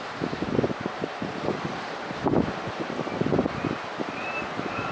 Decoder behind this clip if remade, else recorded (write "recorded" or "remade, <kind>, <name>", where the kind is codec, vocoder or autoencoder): recorded